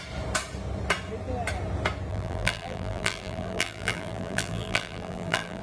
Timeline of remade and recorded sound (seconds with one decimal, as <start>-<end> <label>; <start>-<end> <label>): 0.0-2.1 recorded; 2.1-5.6 remade